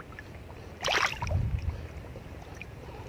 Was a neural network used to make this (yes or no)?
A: no